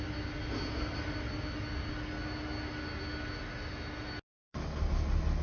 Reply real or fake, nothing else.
real